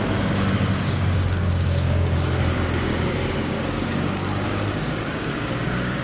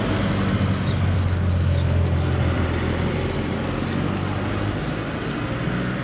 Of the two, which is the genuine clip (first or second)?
second